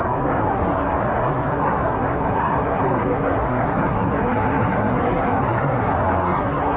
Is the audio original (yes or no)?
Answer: no